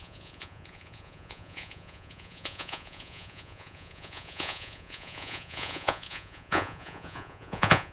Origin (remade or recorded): remade